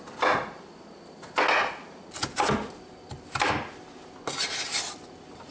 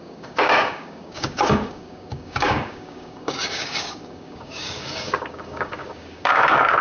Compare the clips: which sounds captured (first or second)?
first